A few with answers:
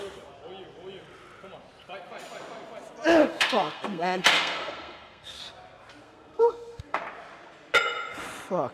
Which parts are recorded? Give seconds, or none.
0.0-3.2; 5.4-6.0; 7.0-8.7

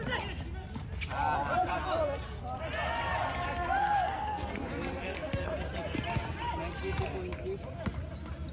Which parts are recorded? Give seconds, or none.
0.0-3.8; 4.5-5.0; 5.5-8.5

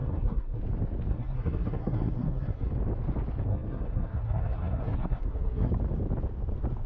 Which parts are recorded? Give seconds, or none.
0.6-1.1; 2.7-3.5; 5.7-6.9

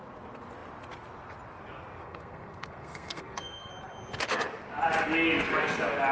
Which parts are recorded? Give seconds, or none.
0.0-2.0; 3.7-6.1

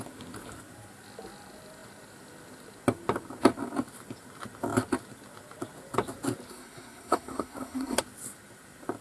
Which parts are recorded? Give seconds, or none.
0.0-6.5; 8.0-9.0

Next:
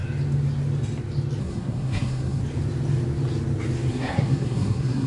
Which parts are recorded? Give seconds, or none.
0.0-1.4; 2.4-3.9

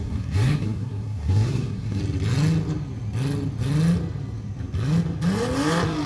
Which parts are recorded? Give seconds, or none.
2.0-6.1